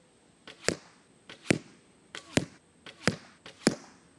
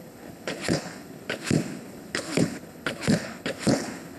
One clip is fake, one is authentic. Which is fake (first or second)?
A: second